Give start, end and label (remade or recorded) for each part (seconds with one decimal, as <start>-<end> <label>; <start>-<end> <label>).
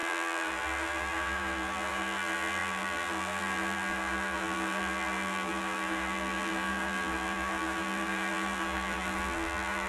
0.0-9.9 remade